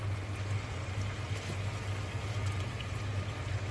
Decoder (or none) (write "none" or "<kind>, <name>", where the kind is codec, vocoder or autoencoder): none